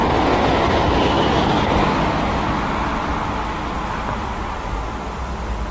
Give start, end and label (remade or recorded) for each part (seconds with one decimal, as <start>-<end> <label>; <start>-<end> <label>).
0.0-5.7 recorded